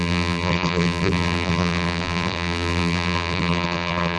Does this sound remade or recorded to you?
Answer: remade